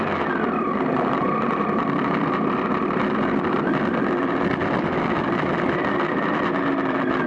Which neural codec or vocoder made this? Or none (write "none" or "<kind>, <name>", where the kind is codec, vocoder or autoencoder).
none